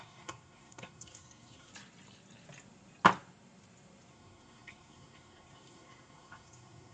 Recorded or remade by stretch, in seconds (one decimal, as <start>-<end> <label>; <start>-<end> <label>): 0.0-1.7 remade; 1.7-4.1 recorded; 4.1-6.9 remade